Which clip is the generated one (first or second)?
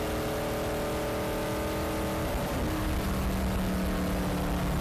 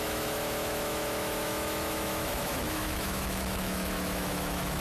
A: second